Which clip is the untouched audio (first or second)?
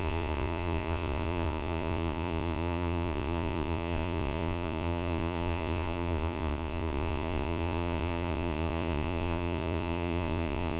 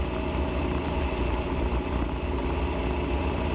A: second